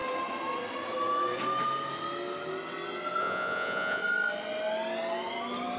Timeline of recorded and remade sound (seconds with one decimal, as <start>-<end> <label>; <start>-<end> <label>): 0.0-3.2 recorded; 3.2-4.0 remade; 4.0-5.8 recorded